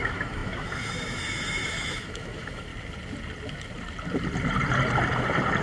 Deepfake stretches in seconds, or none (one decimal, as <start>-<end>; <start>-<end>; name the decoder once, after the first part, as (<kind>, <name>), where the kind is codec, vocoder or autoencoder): 0.0-2.7 (autoencoder, DAC-VAE)